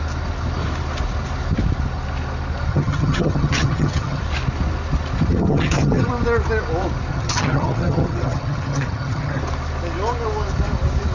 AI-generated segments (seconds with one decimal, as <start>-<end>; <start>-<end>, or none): 2.7-4.2; 5.3-6.1; 7.1-9.4